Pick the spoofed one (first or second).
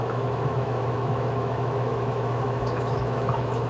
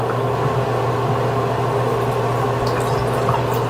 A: first